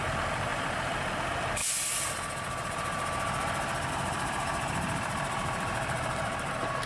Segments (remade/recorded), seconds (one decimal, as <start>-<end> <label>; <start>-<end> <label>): 0.0-1.6 remade; 1.6-3.9 recorded; 3.9-6.9 remade